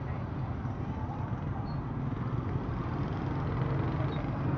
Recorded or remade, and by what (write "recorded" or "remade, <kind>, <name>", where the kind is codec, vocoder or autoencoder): recorded